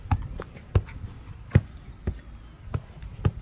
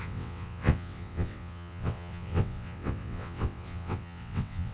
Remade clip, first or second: second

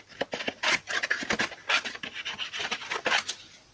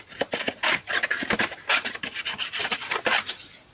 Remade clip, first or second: second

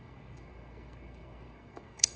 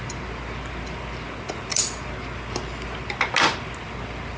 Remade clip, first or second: first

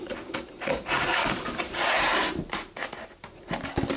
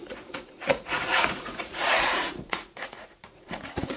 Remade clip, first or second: second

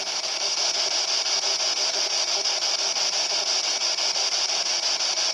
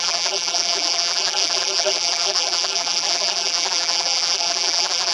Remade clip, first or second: second